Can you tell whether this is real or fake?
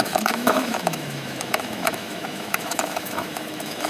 fake